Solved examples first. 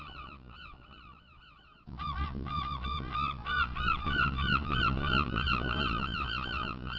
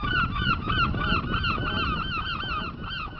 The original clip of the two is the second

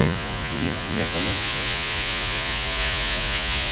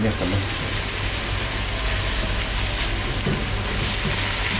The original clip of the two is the second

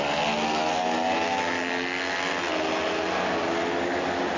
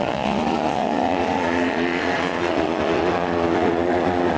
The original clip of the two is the first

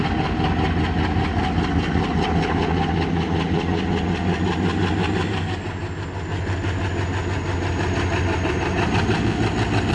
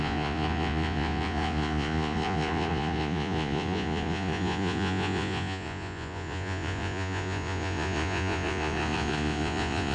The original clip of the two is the first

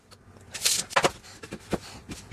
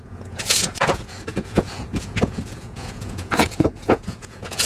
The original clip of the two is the first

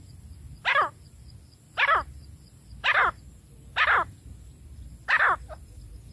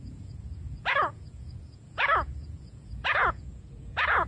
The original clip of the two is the first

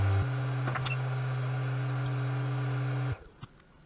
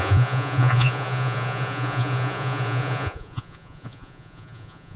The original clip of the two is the first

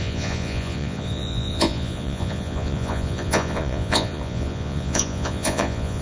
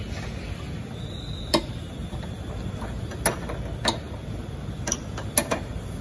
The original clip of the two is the second